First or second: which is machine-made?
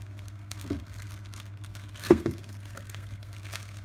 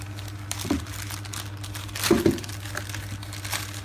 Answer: first